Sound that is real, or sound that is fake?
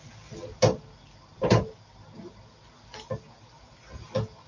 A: real